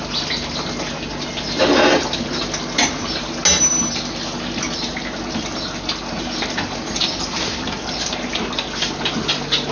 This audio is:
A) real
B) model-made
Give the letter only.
A